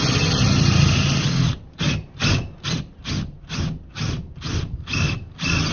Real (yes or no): yes